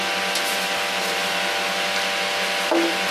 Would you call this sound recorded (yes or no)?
yes